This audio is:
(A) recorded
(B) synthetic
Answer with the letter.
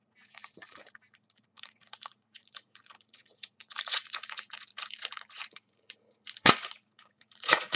B